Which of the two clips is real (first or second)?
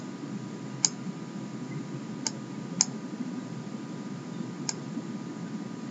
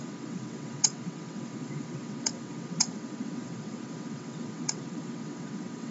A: first